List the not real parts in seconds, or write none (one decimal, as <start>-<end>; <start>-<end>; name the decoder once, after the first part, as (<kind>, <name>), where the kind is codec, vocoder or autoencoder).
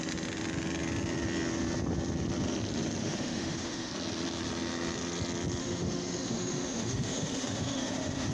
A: 3.0-3.9 (autoencoder, DAC-VAE); 5.6-8.3